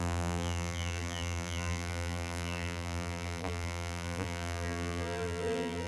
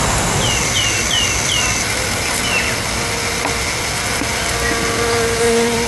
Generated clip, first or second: first